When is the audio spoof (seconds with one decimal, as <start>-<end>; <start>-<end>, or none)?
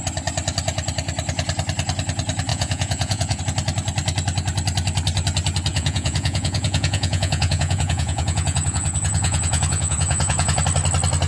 2.5-3.4; 5.7-10.6